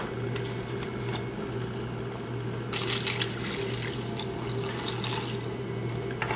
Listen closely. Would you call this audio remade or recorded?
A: recorded